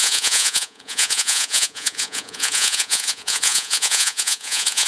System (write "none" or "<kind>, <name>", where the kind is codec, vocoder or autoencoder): vocoder, Vocos